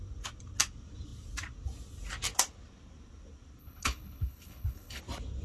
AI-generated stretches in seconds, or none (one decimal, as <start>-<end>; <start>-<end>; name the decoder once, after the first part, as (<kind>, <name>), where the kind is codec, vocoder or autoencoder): 3.6-5.0 (codec, HILCodec)